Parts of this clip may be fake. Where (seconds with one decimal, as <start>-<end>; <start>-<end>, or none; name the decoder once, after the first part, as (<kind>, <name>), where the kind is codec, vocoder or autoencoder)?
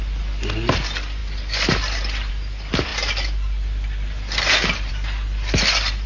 none